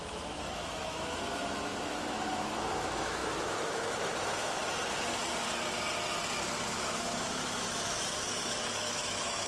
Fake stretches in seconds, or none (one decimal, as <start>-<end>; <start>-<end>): 0.0-4.6; 6.7-9.5